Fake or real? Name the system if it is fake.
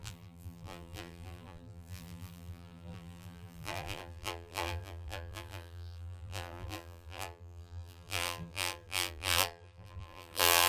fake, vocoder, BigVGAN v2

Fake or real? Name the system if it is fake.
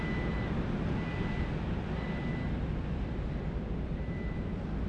real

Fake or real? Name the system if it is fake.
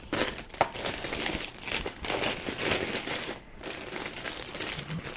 real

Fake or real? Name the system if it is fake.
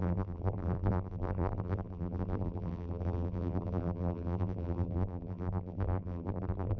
fake, vocoder, BigVGAN v2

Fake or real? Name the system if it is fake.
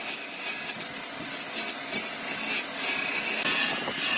real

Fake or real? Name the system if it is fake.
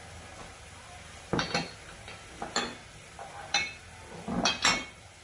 real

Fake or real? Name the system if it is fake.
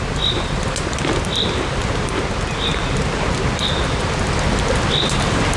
real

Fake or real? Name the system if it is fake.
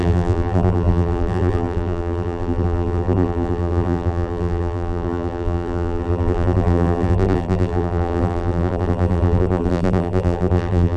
fake, vocoder, BigVGAN v2